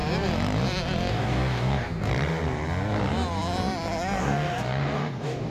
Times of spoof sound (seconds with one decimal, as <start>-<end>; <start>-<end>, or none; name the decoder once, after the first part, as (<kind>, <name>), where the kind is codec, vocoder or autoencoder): 1.1-2.1 (codec, DAC); 4.2-5.5